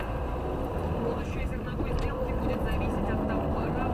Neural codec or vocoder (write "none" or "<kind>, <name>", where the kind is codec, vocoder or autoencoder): vocoder, BigVGAN v2